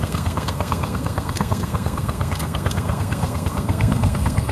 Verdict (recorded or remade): remade